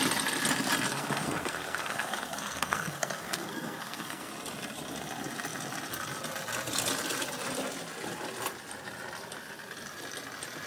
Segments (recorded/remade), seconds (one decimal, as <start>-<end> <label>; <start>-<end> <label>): 0.0-0.9 recorded; 0.9-4.3 remade; 4.3-10.7 recorded

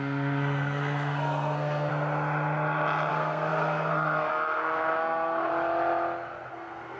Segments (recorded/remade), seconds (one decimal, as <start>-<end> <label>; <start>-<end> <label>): 0.0-1.9 remade; 1.9-3.1 recorded; 3.1-5.5 remade; 5.5-6.5 recorded; 6.5-7.0 remade

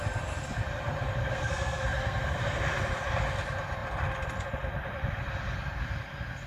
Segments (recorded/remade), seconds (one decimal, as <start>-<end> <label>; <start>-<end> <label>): 0.0-1.2 recorded; 1.2-2.6 remade; 2.6-6.5 recorded

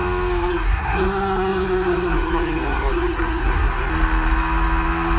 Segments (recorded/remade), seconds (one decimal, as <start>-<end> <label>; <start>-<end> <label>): 0.0-0.5 recorded; 0.5-3.9 remade; 3.9-5.2 recorded

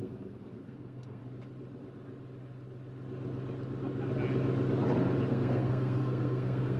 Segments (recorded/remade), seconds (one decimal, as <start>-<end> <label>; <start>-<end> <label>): 0.0-1.2 remade; 1.2-5.3 recorded; 5.3-6.8 remade